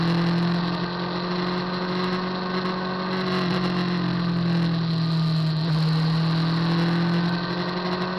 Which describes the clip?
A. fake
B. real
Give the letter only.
B